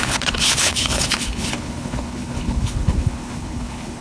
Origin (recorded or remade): remade